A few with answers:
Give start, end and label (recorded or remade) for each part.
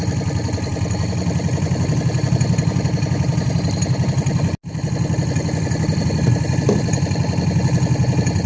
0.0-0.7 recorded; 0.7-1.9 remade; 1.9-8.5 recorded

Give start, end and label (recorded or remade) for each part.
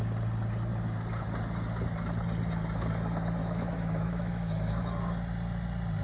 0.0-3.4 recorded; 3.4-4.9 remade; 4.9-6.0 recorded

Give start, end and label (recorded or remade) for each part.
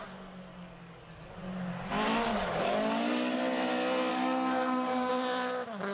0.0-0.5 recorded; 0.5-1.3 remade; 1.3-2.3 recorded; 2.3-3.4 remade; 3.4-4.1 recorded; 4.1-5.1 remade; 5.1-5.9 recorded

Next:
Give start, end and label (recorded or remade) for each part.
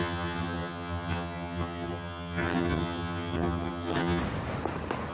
0.0-4.2 remade; 4.2-5.1 recorded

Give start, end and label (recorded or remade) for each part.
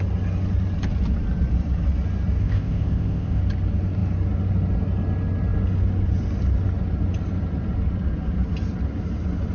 0.0-2.4 recorded; 2.4-3.4 remade; 3.4-9.5 recorded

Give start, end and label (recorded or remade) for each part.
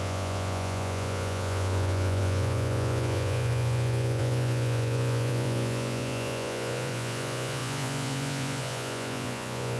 0.0-9.8 remade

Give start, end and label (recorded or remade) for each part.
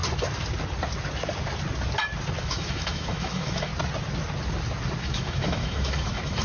0.0-2.4 recorded; 2.4-3.7 remade; 3.7-5.0 recorded; 5.0-6.4 remade